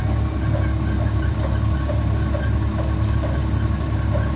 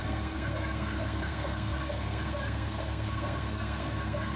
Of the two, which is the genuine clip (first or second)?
first